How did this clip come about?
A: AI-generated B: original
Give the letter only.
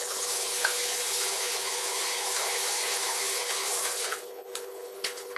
A